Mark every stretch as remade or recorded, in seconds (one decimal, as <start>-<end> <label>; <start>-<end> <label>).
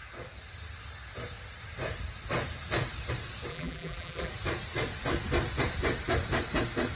0.0-3.5 recorded; 3.5-4.3 remade; 4.3-7.0 recorded